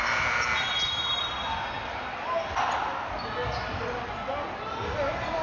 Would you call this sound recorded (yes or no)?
yes